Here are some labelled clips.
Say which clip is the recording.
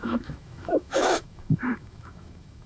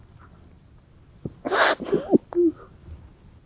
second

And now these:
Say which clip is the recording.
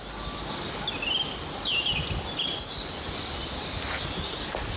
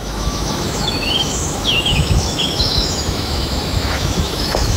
first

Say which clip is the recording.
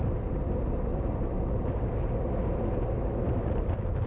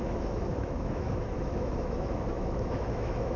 first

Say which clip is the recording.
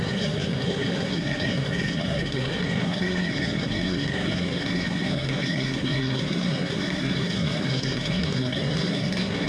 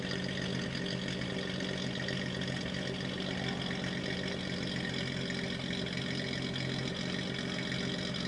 second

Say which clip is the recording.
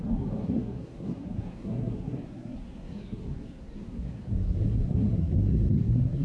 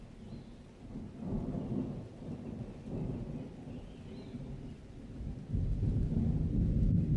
second